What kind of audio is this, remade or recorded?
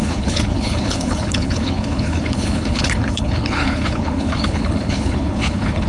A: remade